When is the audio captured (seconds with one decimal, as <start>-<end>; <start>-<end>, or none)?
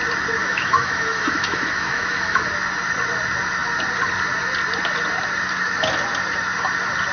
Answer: 0.0-0.4; 2.4-7.1